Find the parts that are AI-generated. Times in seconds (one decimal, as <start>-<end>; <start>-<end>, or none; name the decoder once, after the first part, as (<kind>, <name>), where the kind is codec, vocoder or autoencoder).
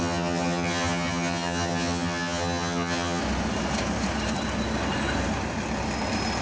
0.0-3.2 (vocoder, HiFi-GAN)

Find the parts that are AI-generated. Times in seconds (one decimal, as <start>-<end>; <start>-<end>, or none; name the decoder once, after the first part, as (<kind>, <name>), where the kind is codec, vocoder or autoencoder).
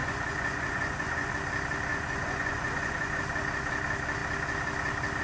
0.0-1.3 (vocoder, Vocos); 1.9-3.2